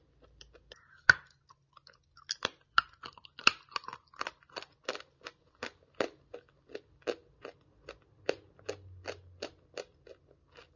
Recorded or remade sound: recorded